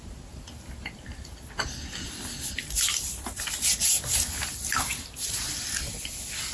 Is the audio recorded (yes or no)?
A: yes